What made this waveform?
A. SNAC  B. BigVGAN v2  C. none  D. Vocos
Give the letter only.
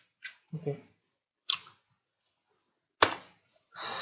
C